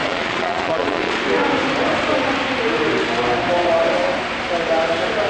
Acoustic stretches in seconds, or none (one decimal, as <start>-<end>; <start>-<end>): 1.2-5.3